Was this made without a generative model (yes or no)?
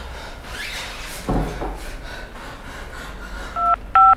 yes